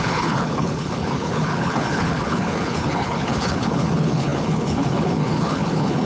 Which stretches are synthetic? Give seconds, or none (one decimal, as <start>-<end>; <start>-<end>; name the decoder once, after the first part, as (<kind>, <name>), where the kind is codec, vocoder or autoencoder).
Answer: 0.0-6.1 (codec, HILCodec)

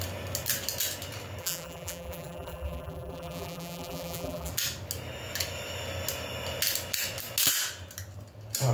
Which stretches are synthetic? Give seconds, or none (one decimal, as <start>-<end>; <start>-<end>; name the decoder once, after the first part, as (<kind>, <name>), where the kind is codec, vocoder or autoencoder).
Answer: 1.4-4.5 (vocoder, BigVGAN v2)

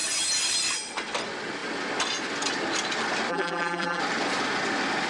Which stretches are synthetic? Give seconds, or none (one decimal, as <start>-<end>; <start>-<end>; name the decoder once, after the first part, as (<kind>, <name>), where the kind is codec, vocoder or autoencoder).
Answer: 3.3-4.0 (vocoder, BigVGAN v2)

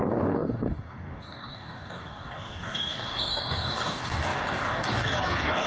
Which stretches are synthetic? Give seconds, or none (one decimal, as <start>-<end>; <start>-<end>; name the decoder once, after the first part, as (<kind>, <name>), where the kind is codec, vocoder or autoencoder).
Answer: 0.0-5.7 (codec, DAC)

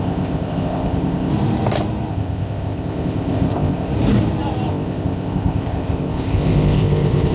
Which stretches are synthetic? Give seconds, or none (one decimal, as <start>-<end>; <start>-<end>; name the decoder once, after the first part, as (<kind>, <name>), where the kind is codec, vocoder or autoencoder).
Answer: 0.0-1.3 (codec, ZipCodec); 2.1-3.9; 4.7-7.3

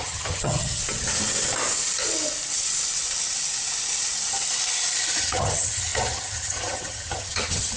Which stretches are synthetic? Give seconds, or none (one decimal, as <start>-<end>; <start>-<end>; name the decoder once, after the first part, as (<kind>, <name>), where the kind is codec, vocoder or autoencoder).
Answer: 0.0-0.8 (vocoder, HiFi-GAN); 5.2-7.8

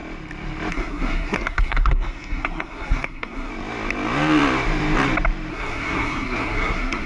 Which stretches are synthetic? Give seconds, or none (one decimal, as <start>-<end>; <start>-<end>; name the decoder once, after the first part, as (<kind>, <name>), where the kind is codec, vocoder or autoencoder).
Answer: 0.7-3.5 (codec, SNAC); 5.5-7.1